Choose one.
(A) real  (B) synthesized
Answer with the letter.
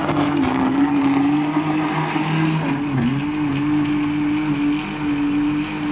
A